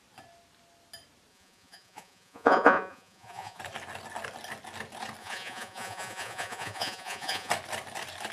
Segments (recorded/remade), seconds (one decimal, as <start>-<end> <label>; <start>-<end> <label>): 0.0-1.3 recorded; 1.3-3.6 remade; 3.6-5.2 recorded; 5.2-7.5 remade; 7.5-8.3 recorded